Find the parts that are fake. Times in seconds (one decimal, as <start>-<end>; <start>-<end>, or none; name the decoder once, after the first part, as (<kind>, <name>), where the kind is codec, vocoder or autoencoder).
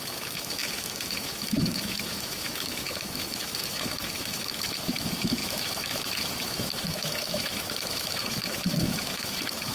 0.0-9.7 (autoencoder, DAC-VAE)